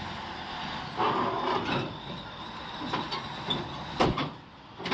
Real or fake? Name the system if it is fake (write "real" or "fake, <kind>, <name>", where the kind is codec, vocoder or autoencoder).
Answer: real